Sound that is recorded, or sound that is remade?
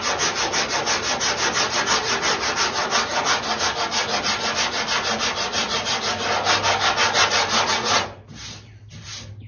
recorded